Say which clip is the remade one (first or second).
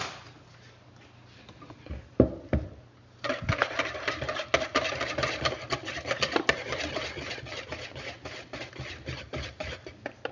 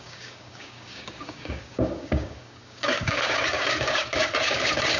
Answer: second